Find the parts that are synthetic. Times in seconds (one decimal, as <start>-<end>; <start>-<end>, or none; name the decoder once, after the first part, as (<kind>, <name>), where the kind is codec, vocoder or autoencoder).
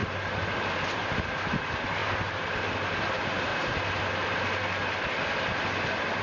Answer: 0.0-1.6 (vocoder, BigVGAN v2); 2.0-2.5